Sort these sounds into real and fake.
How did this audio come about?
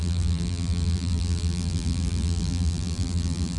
fake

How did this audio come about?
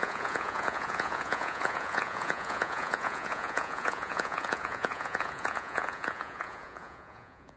fake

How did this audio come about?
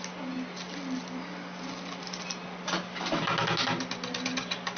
real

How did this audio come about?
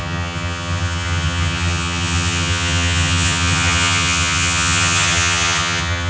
fake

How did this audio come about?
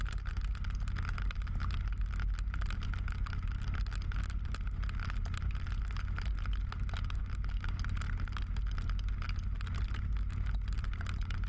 real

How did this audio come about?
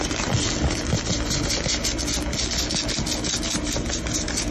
real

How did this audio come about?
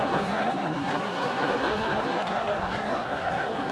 fake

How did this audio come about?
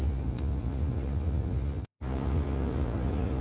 fake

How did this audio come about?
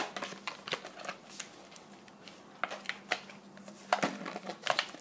real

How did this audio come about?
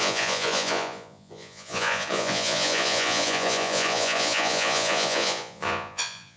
fake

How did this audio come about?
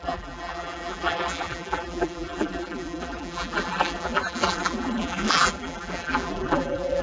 fake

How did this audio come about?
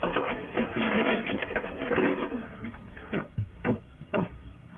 fake